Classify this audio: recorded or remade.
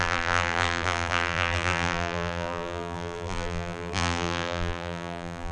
remade